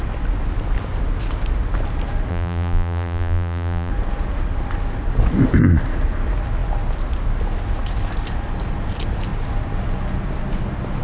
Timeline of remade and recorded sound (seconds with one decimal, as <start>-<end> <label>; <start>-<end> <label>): 0.0-2.3 recorded; 2.3-3.9 remade; 3.9-11.0 recorded